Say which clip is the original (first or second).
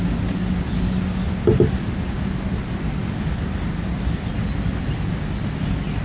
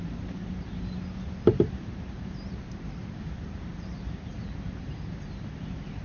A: first